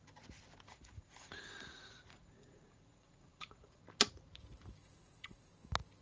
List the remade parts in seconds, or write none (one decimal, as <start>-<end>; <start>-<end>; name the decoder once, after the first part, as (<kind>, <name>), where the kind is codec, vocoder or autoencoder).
0.7-3.8 (vocoder, Vocos); 4.8-5.5